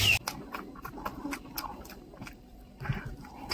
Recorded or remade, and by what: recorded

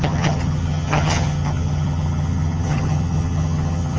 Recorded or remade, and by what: remade, vocoder, HiFi-GAN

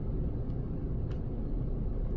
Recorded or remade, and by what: recorded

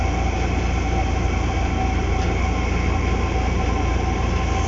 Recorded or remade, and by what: recorded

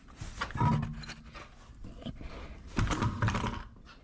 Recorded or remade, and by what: recorded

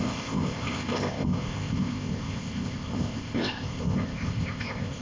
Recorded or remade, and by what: remade, codec, ZipCodec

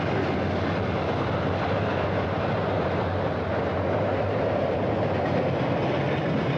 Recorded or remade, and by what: recorded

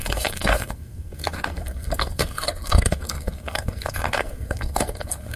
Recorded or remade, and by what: remade, codec, SNAC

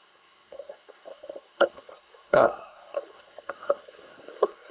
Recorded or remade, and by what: remade, codec, SNAC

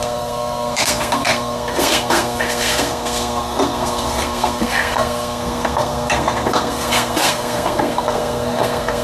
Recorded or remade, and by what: remade, codec, SNAC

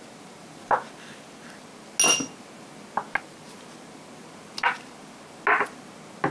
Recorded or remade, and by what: recorded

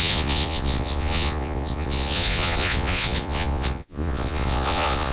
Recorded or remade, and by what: remade, vocoder, Vocos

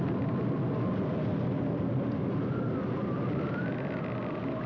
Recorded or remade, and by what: recorded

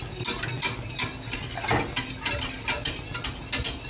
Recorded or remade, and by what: recorded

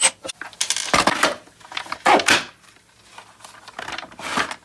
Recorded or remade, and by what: recorded